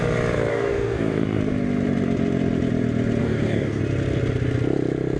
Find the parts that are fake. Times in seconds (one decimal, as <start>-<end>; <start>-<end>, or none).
0.5-1.4; 3.2-3.8